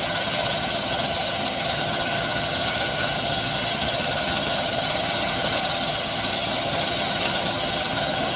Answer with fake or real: fake